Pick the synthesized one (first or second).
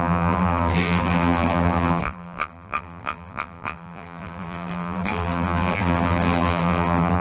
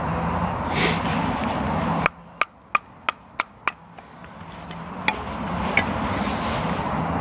first